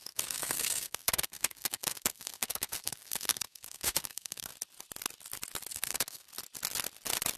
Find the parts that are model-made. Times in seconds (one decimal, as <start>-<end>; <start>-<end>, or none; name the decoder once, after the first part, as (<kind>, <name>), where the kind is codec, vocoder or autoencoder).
0.0-4.5 (codec, SNAC); 5.7-6.3